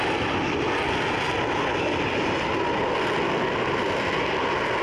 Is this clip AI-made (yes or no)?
no